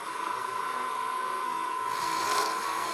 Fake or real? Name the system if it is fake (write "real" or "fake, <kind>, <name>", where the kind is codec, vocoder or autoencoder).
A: fake, codec, SNAC